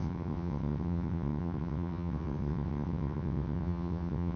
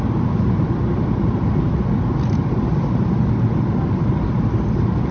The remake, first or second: first